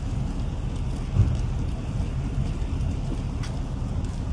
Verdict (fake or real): real